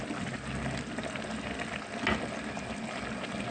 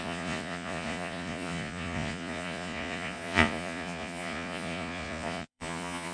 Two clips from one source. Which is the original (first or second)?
first